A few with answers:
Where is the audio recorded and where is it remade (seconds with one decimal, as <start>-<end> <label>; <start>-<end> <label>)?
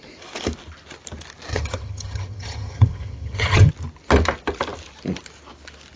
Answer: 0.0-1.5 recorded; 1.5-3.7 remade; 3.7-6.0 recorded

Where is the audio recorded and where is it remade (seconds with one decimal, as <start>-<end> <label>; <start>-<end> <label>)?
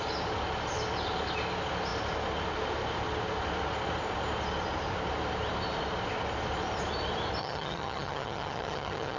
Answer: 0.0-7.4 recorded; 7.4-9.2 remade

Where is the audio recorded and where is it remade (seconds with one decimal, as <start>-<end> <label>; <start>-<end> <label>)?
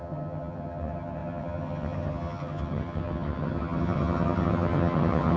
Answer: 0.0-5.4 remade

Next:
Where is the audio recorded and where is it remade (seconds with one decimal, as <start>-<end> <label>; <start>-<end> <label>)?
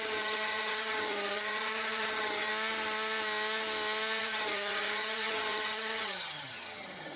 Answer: 0.0-2.5 remade; 2.5-4.2 recorded; 4.2-7.2 remade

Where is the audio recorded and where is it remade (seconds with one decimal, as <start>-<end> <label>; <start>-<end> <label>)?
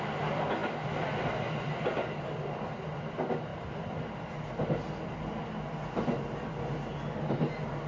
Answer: 0.0-7.9 recorded